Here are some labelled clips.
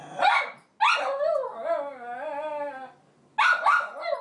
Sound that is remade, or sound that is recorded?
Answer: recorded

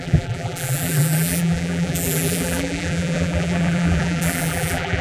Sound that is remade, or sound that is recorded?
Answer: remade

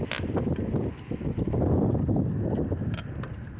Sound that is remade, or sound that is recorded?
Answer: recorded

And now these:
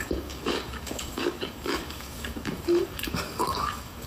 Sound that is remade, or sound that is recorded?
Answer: remade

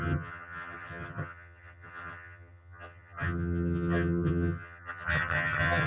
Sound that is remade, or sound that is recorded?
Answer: remade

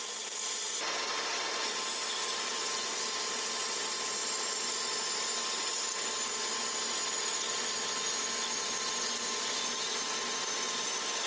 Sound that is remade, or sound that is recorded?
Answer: recorded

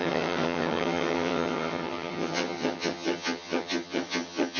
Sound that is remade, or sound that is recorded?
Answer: remade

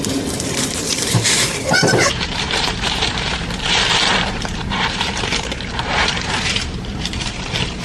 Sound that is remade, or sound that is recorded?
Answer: remade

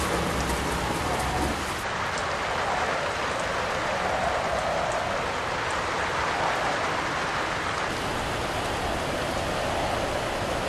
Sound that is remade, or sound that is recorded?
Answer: recorded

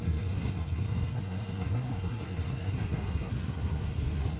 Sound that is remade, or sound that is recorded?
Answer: remade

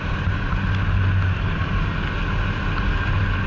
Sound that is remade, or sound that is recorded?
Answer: recorded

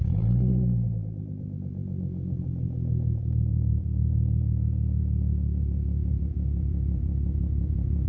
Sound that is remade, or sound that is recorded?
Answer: remade